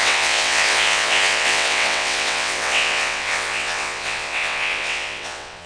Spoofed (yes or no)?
yes